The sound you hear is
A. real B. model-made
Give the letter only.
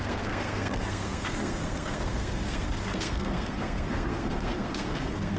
B